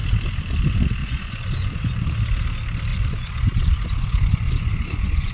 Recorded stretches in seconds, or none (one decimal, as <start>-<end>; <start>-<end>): 0.0-1.0; 1.9-2.9